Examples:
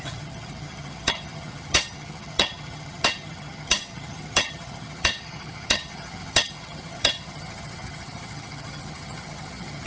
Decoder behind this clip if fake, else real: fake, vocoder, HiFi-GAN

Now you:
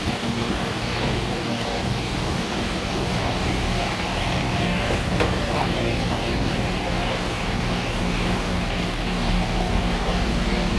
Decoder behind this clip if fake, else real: fake, codec, DAC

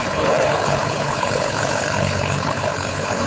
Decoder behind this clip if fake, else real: fake, codec, HILCodec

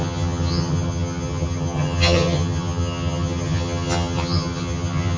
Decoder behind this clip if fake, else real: fake, vocoder, HiFi-GAN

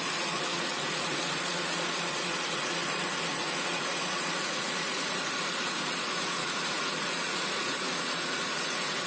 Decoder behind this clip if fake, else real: fake, vocoder, Vocos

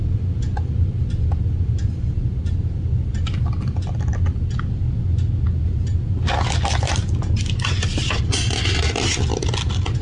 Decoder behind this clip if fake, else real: real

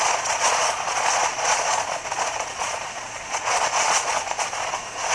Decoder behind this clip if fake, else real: fake, vocoder, Vocos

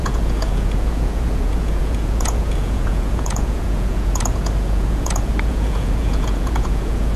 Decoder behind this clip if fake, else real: fake, vocoder, Vocos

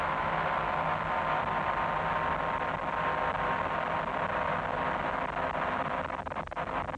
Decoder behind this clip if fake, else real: real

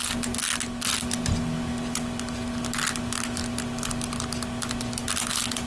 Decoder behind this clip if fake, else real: real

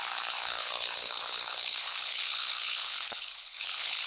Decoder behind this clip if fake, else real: fake, codec, HILCodec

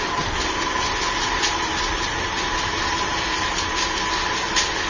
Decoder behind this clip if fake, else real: real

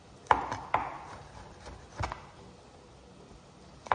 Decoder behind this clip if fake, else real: real